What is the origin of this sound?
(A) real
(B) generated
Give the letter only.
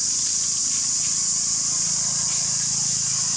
A